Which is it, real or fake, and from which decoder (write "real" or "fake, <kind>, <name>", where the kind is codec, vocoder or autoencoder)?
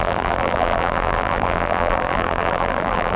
fake, vocoder, BigVGAN v2